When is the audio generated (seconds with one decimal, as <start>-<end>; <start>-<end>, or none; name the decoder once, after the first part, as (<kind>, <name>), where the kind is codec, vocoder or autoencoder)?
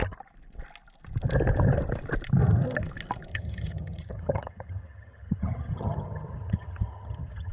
3.3-7.5 (vocoder, HiFi-GAN)